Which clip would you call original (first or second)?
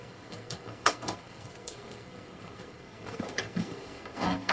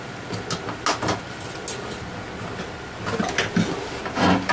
second